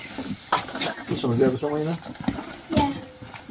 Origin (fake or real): fake